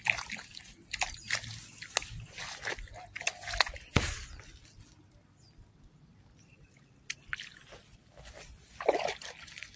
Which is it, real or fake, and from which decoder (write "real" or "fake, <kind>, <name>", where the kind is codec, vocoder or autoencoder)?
real